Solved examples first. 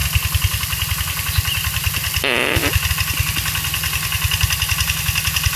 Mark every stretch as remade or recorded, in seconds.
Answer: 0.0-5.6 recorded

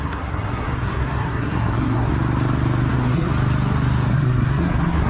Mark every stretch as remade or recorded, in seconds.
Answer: 0.0-2.1 remade; 2.1-2.9 recorded; 2.9-3.3 remade; 3.3-4.1 recorded; 4.1-5.1 remade

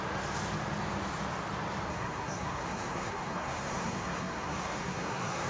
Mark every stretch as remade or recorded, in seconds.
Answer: 0.0-1.9 recorded; 1.9-5.5 remade

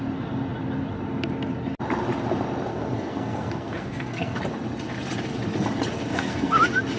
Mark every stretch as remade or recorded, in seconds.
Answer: 0.0-2.7 recorded; 2.7-4.4 remade; 4.4-6.1 recorded; 6.1-6.6 remade; 6.6-7.0 recorded